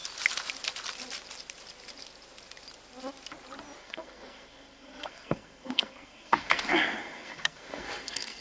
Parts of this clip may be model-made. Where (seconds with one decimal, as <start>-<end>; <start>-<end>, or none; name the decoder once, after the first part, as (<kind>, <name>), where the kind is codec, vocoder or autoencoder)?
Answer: 3.8-8.4 (codec, SNAC)